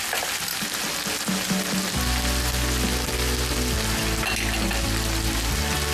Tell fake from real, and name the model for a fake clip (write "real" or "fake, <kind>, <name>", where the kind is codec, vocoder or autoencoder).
real